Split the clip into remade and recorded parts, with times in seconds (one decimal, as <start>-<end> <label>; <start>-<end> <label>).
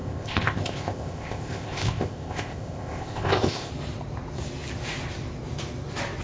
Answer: 0.0-3.7 remade; 3.7-6.2 recorded